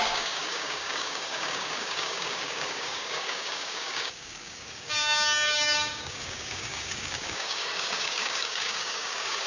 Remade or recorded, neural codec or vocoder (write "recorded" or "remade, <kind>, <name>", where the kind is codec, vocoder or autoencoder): remade, codec, DAC